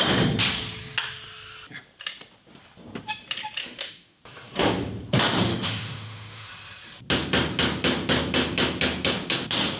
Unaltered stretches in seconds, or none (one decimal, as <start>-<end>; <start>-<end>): 0.0-3.6; 4.2-5.5; 6.5-9.8